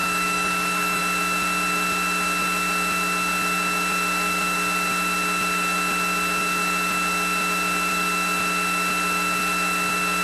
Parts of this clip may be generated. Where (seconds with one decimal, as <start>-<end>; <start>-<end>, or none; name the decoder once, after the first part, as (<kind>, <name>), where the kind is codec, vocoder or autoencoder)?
0.0-1.0 (autoencoder, DAC-VAE)